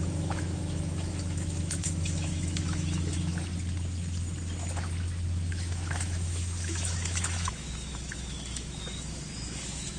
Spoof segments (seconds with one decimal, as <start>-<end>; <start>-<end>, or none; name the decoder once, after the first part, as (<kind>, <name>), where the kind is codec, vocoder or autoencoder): 0.0-3.3 (autoencoder, DAC-VAE); 5.5-10.0